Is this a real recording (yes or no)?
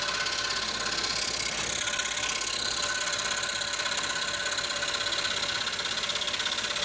yes